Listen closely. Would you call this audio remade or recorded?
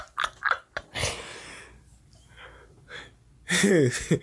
recorded